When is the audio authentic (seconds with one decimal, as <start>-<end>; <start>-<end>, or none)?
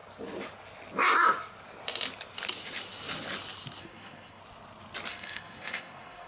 0.0-3.8; 4.4-5.1